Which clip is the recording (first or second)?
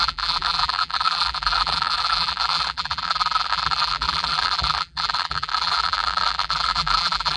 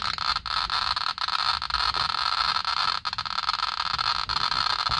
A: second